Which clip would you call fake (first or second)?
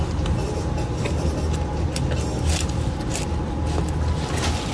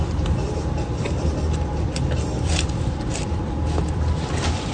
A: second